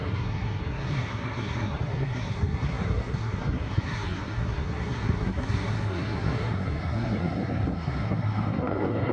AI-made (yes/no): yes